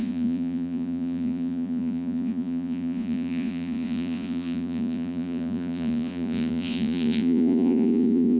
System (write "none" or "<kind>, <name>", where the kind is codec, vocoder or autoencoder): vocoder, Vocos